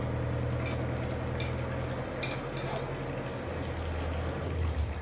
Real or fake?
real